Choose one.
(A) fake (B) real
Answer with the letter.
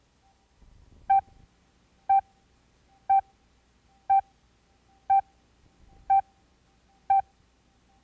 B